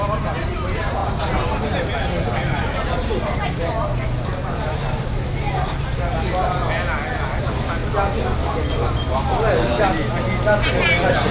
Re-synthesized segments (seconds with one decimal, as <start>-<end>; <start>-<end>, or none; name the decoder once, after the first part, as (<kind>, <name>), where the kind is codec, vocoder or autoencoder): none